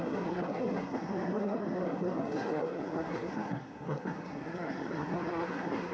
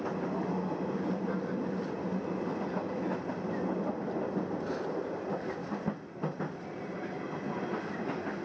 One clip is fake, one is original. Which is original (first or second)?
second